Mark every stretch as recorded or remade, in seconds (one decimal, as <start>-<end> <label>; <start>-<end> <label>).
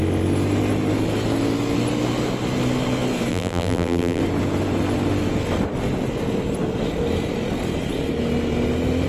0.0-3.3 recorded; 3.3-4.2 remade; 4.2-9.1 recorded